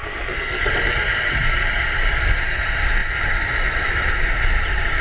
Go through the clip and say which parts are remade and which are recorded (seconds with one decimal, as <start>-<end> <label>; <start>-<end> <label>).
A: 0.0-0.7 remade; 0.7-5.0 recorded